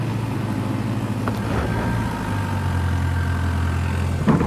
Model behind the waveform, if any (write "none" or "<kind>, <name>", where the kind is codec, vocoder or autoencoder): none